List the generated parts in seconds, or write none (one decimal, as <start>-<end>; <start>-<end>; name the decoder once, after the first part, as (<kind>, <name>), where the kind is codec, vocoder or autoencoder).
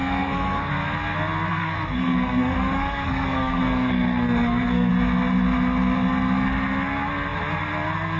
0.0-0.7 (codec, SNAC); 1.5-4.9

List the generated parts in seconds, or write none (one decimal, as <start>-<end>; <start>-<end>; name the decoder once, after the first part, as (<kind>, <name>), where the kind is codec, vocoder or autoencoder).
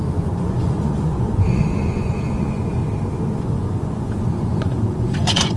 0.0-2.8 (vocoder, Vocos); 3.3-5.6